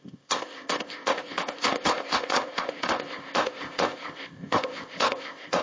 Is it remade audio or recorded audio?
remade